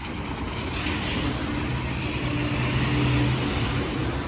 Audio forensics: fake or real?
real